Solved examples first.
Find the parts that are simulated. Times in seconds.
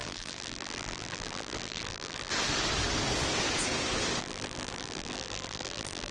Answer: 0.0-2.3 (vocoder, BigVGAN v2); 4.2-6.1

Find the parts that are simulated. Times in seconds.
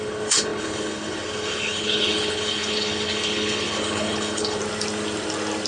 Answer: 0.0-4.6 (codec, HILCodec)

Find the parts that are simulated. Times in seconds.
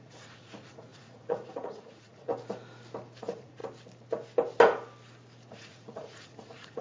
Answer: 0.0-2.3 (vocoder, Vocos); 3.2-3.6; 5.5-6.8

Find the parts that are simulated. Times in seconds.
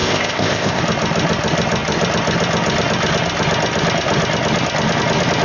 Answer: 0.0-0.8 (codec, ZipCodec)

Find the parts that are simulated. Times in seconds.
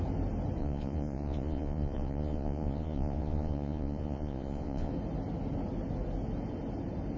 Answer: 0.6-4.9 (vocoder, Vocos)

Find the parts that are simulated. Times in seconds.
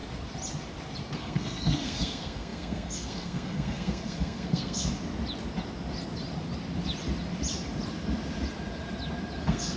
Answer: 1.1-4.9 (codec, SNAC); 9.4-9.8